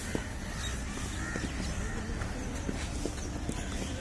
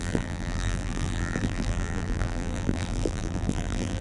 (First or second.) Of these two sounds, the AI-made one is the second